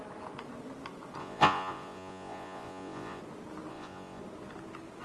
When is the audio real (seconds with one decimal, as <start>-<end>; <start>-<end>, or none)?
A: 0.0-1.2; 3.2-3.7; 4.2-5.0